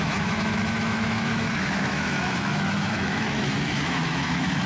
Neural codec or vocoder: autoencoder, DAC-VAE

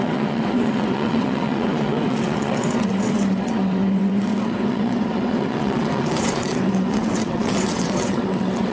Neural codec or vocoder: vocoder, WaveNeXt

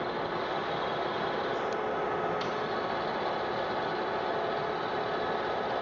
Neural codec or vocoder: none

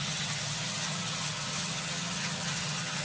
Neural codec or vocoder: vocoder, HiFi-GAN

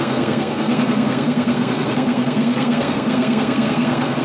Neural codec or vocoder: codec, SNAC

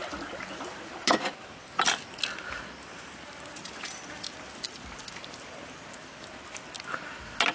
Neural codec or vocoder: none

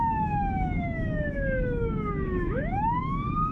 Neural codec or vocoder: autoencoder, DAC-VAE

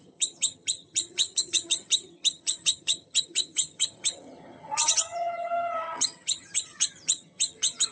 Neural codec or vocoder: vocoder, HiFi-GAN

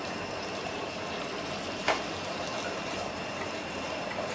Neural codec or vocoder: vocoder, BigVGAN v2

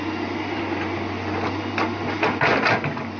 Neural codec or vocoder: none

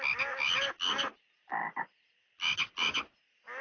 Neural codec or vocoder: none